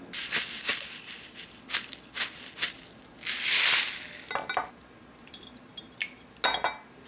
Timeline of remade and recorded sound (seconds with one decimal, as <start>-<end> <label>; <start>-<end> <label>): 0.0-0.7 recorded; 0.7-1.9 remade; 1.9-5.7 recorded; 5.7-6.4 remade; 6.4-7.1 recorded